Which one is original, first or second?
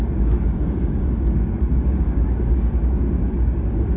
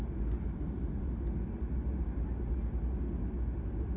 second